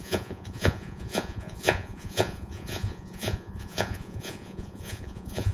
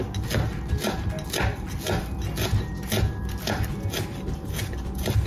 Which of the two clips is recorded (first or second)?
second